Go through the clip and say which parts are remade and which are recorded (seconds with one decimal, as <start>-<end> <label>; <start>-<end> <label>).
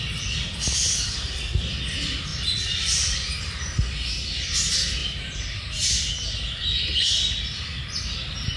0.0-5.0 recorded; 5.0-6.6 remade; 6.6-8.6 recorded